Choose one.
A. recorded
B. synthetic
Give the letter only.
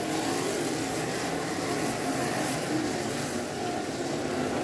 A